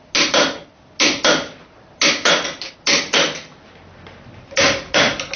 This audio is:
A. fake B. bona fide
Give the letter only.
B